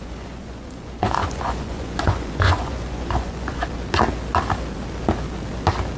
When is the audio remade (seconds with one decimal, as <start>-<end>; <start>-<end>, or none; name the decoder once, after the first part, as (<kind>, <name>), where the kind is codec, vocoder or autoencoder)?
0.0-3.6 (vocoder, Vocos)